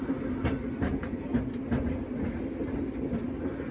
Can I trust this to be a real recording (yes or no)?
yes